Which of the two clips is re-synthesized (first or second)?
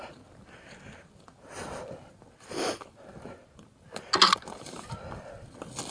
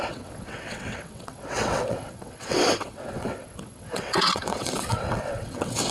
second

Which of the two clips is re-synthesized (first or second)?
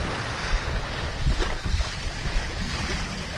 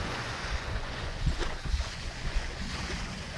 second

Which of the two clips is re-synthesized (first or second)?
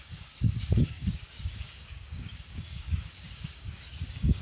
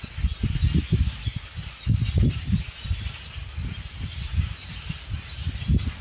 first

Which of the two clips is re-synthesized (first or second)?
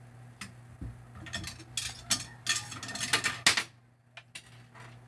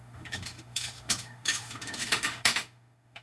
second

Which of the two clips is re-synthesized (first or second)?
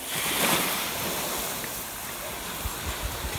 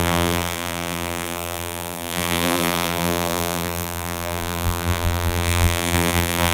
second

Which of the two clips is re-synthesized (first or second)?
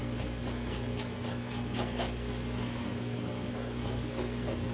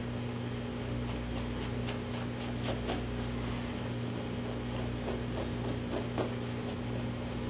first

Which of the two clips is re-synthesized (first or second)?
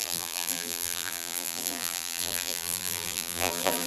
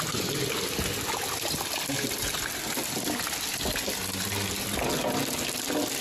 first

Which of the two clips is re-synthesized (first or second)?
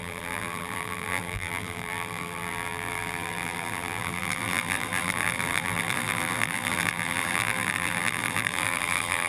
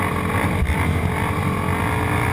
first